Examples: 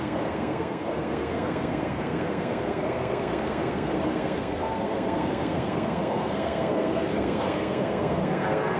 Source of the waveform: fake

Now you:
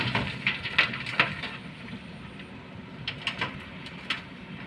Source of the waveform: real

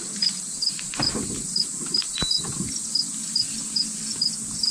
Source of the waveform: real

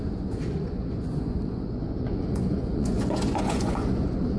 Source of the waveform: fake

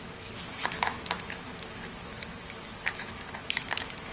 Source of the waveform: fake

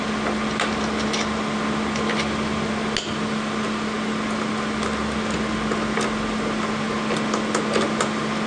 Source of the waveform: real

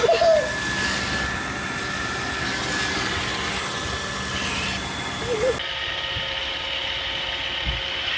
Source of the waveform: real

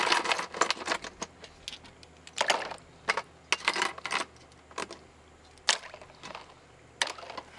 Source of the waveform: real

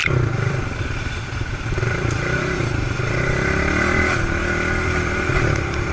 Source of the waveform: fake